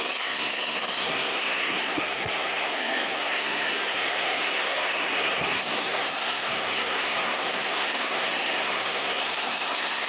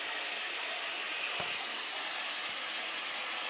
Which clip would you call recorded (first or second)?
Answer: second